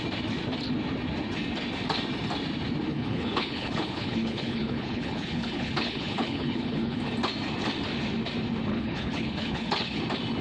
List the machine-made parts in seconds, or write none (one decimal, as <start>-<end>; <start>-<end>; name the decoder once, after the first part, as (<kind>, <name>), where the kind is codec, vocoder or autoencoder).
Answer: 2.9-7.0 (codec, HILCodec); 8.7-10.0